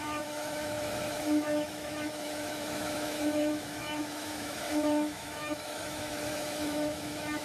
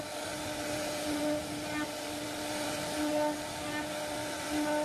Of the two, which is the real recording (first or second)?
second